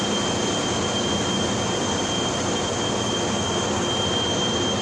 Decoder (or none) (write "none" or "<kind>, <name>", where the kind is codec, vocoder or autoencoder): none